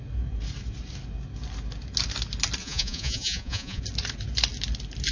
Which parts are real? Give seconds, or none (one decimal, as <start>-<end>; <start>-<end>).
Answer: 0.0-2.6; 3.8-5.1